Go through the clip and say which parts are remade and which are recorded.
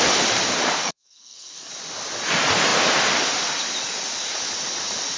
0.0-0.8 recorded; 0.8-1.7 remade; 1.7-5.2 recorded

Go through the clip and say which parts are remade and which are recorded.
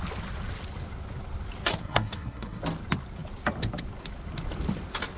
0.0-1.8 recorded; 1.8-2.6 remade; 2.6-5.2 recorded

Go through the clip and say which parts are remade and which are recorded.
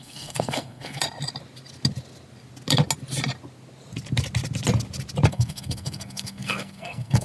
0.0-1.0 remade; 1.0-5.3 recorded; 5.3-7.2 remade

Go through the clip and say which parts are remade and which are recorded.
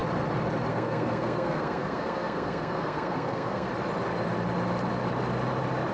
0.0-0.7 recorded; 0.7-3.7 remade; 3.7-5.9 recorded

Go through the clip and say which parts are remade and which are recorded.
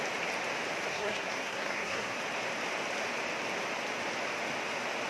0.0-0.9 recorded; 0.9-2.2 remade; 2.2-5.1 recorded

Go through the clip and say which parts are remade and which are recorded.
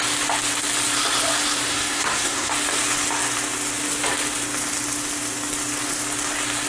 0.0-1.7 recorded; 1.7-2.5 remade; 2.5-6.7 recorded